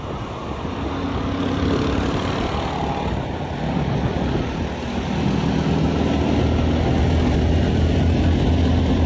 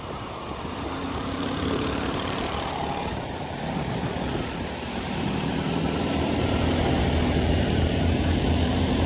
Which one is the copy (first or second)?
second